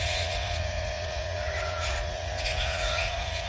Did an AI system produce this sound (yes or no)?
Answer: yes